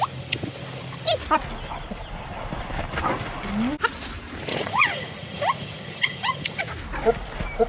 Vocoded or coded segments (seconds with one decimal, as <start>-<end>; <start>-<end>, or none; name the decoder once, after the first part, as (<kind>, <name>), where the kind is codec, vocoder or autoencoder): 4.5-6.6 (vocoder, Vocos)

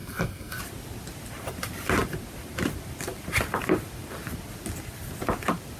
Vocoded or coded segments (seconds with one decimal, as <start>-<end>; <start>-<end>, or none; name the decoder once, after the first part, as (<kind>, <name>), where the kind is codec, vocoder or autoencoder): 0.0-0.6 (codec, SNAC)